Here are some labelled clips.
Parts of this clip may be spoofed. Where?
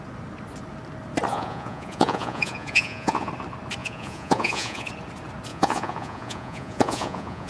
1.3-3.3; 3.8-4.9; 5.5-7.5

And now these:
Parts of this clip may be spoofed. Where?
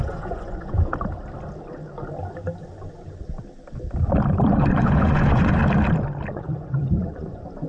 0.0-0.9; 4.5-5.6; 6.3-7.7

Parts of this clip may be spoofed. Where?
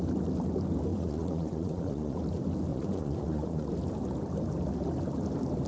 0.9-2.2; 2.7-3.7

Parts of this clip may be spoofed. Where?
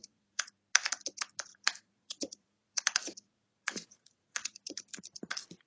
0.0-0.6; 1.5-4.9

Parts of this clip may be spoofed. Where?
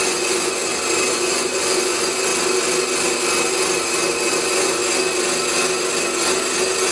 0.0-0.6; 1.1-2.3; 4.3-4.8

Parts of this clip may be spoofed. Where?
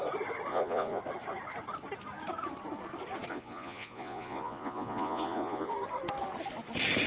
0.5-1.0; 3.3-5.7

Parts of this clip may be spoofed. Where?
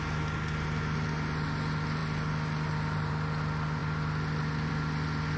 none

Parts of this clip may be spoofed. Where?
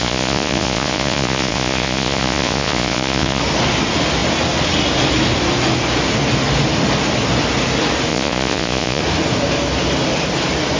0.0-3.4; 8.1-9.0